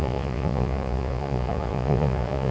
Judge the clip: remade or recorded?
remade